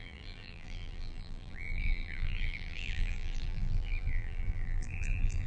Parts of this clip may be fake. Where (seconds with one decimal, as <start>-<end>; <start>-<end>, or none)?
0.0-5.5

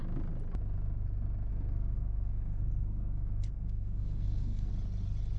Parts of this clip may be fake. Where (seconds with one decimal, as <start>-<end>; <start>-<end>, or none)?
1.5-4.7

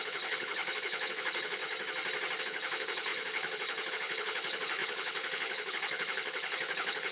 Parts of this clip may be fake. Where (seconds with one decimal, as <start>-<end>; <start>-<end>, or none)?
0.0-1.6; 2.4-7.1

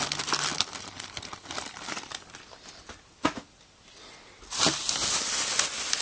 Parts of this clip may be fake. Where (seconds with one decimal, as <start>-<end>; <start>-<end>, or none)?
none